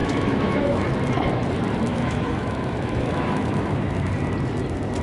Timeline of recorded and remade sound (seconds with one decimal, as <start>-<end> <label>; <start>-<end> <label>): 0.0-0.9 remade; 0.9-1.9 recorded; 1.9-4.1 remade; 4.1-5.0 recorded